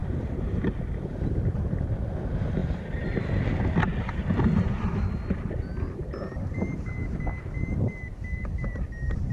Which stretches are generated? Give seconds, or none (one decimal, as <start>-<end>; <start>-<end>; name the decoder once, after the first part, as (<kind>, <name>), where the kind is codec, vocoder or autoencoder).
0.0-1.9 (vocoder, BigVGAN v2); 5.7-6.3